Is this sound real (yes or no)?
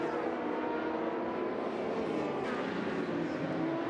yes